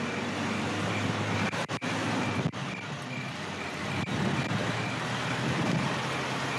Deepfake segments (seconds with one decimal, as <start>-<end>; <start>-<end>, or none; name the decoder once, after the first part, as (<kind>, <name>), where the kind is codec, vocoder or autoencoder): 0.0-1.6 (vocoder, BigVGAN v2); 5.6-6.6